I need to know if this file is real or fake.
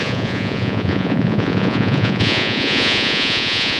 fake